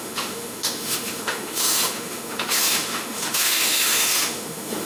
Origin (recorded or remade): remade